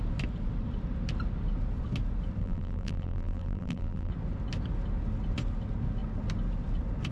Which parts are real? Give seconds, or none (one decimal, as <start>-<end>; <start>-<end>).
0.0-2.4; 4.1-7.1